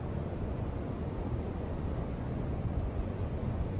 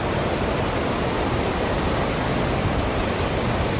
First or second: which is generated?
first